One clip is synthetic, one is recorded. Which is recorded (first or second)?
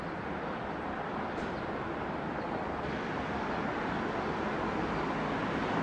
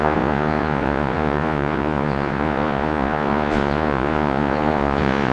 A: first